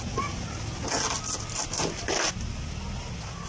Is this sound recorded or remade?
recorded